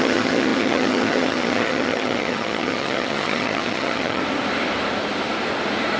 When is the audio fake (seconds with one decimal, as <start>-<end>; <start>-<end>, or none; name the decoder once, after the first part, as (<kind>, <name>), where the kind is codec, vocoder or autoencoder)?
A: 0.0-4.2 (vocoder, HiFi-GAN)